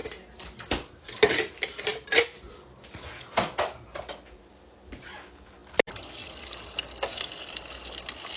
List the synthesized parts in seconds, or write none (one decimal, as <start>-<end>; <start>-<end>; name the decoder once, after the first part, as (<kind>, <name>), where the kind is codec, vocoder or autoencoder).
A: none